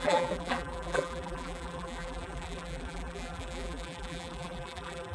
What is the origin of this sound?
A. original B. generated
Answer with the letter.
B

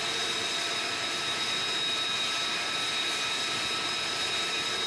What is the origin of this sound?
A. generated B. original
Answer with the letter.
B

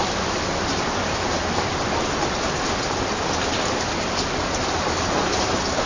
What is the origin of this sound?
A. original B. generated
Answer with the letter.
A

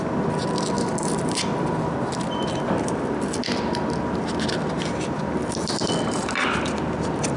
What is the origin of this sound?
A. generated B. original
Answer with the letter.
A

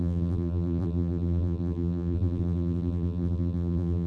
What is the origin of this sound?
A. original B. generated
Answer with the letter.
B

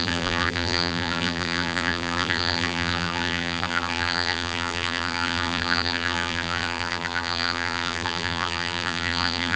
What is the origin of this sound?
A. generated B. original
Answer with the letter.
A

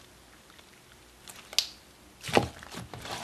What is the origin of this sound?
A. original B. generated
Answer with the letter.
A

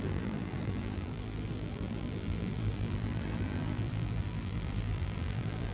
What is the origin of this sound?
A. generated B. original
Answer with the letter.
A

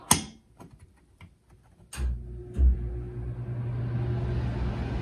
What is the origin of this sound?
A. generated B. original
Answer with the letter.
B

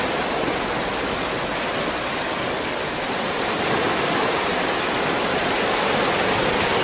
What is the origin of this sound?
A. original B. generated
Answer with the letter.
A